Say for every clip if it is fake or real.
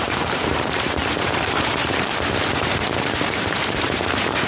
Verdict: fake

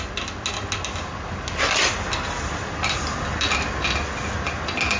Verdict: real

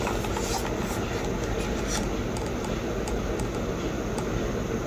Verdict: real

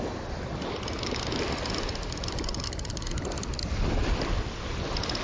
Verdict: real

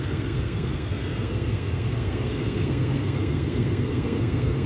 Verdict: fake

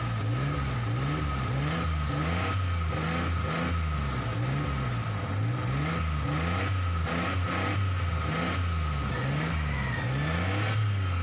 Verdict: real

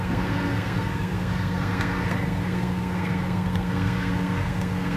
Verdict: fake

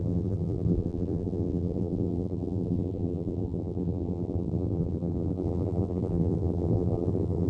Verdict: fake